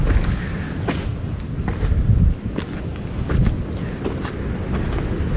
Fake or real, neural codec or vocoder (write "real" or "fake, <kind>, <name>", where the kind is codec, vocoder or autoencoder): real